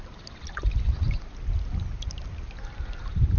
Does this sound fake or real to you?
real